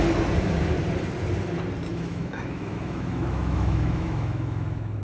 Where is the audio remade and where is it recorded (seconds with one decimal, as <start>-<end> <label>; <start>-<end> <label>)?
0.0-1.9 recorded; 1.9-5.0 remade